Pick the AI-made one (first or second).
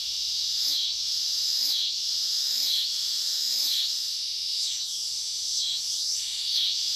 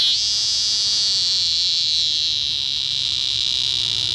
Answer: first